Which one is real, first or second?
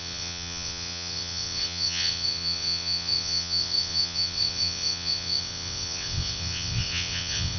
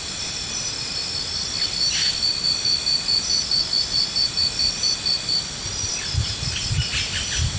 second